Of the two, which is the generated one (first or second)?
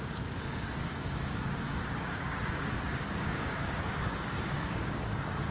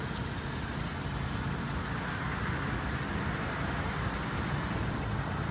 first